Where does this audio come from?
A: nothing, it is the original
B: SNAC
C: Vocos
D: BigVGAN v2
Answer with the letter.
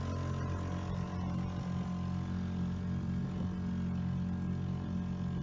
A